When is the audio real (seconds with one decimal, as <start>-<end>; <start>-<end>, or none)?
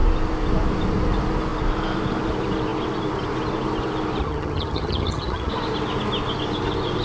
0.0-4.2; 5.5-7.0